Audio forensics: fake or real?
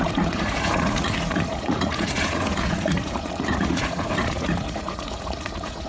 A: fake